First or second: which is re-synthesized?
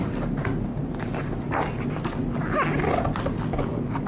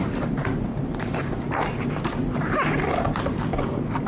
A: second